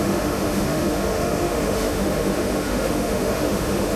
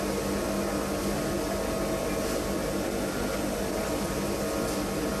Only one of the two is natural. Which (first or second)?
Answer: second